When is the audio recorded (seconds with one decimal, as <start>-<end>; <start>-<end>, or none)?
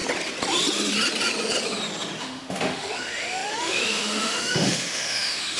0.0-2.2